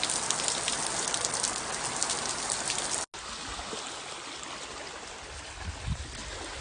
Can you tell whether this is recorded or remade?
recorded